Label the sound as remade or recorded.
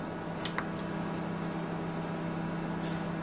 recorded